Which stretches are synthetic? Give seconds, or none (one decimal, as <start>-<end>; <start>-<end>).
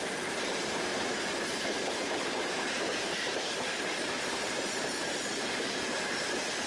0.0-6.7